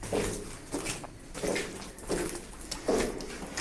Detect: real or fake real